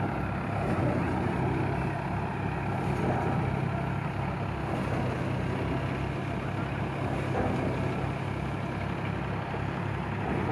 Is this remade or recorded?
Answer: recorded